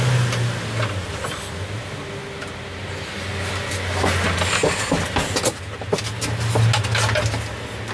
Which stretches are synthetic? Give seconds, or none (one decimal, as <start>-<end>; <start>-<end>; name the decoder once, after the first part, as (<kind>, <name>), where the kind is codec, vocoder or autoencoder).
none